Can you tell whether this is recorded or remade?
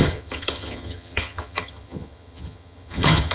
remade